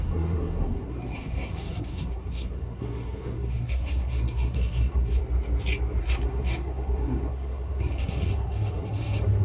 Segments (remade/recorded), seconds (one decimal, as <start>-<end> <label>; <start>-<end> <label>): 0.0-5.2 remade; 5.2-6.0 recorded; 6.0-9.4 remade